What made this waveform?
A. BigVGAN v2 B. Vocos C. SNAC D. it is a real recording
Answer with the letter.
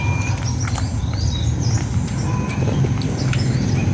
D